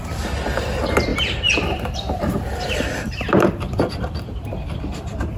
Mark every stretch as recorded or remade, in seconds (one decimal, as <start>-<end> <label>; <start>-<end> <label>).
0.0-1.1 recorded; 1.1-4.3 remade; 4.3-5.4 recorded